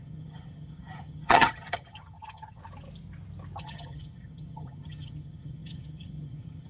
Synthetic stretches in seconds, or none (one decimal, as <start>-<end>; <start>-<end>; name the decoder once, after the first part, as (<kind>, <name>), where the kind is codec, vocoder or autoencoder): 0.0-2.6 (vocoder, HiFi-GAN); 3.6-6.7